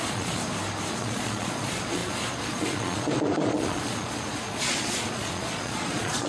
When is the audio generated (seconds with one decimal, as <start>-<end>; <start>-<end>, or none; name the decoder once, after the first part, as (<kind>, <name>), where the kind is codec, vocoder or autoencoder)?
0.0-0.4 (vocoder, Vocos); 0.9-6.3